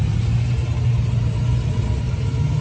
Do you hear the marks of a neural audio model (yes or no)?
no